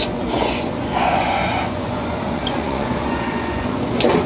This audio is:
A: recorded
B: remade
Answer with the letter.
B